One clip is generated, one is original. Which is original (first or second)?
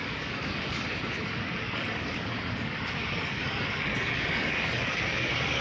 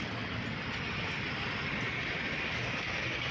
second